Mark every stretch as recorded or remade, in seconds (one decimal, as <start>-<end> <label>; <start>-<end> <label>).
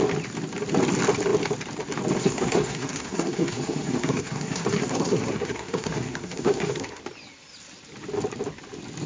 0.0-2.2 recorded; 2.2-7.0 remade; 7.0-9.1 recorded